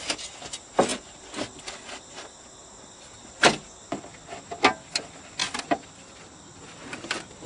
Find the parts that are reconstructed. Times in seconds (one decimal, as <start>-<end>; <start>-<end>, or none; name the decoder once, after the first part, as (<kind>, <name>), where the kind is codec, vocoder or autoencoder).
none